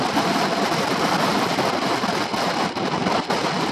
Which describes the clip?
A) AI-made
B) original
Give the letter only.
B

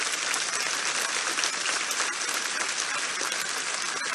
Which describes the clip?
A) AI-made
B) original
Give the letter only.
B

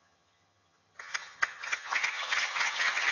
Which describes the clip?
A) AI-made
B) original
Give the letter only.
A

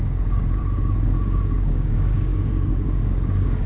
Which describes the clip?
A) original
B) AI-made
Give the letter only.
B